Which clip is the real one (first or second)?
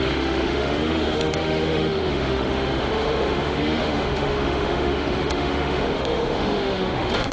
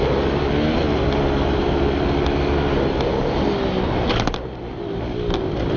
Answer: second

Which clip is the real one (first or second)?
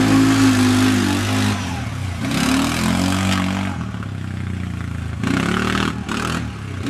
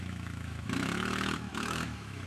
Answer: first